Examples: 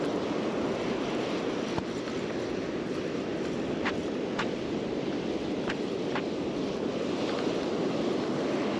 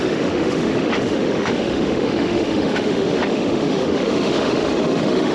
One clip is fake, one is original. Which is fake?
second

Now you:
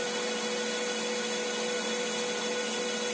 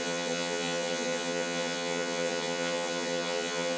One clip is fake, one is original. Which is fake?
second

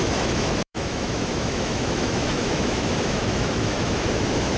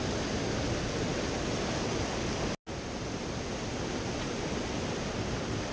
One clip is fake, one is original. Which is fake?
first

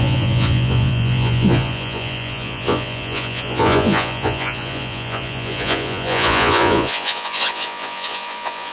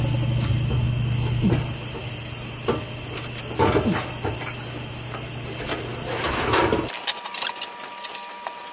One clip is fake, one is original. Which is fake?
first